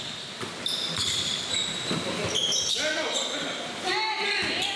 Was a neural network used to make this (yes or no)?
no